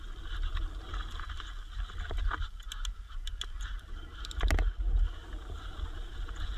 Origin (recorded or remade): recorded